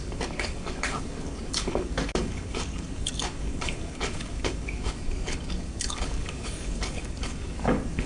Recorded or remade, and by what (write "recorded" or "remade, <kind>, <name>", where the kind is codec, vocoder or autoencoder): remade, codec, DAC